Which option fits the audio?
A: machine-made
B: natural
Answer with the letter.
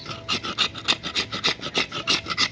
B